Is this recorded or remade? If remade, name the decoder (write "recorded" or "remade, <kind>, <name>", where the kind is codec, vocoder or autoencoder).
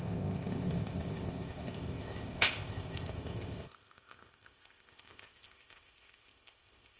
remade, codec, ZipCodec